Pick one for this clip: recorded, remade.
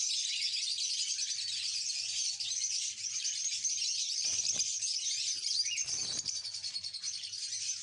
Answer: recorded